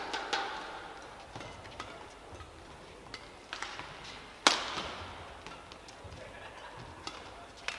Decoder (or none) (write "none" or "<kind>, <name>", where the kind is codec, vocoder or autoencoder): none